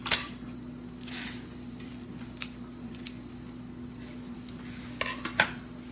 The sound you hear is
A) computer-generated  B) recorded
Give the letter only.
B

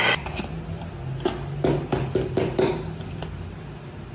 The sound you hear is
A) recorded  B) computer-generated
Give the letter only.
A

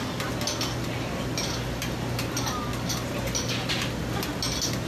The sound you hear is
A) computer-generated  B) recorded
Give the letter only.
B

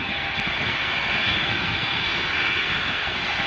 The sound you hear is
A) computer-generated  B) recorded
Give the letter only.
A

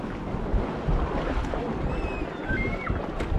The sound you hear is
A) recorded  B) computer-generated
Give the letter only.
A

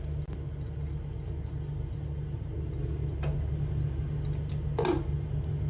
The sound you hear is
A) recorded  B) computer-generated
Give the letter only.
A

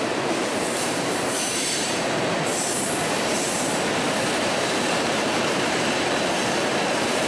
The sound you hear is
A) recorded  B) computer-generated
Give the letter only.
B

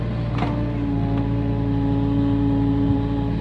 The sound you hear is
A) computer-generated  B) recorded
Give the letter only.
B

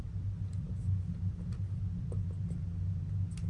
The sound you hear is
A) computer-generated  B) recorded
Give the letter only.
B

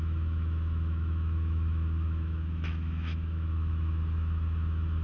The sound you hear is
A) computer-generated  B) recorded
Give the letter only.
A